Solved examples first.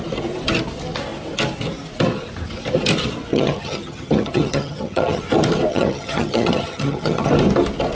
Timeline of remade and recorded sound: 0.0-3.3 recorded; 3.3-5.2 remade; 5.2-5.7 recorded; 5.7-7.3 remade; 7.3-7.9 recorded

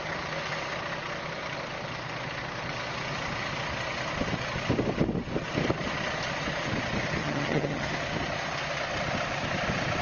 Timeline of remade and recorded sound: 0.0-7.2 recorded; 7.2-7.9 remade; 7.9-10.0 recorded